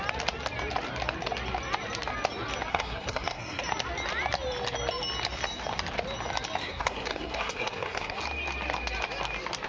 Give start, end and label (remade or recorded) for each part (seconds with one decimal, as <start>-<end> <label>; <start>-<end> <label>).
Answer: 0.0-2.7 recorded; 2.7-3.6 remade; 3.6-6.6 recorded; 6.6-8.2 remade; 8.2-9.7 recorded